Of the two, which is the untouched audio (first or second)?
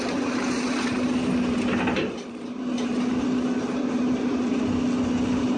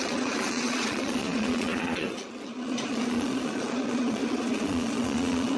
first